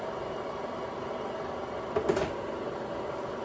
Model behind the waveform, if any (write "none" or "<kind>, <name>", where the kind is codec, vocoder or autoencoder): none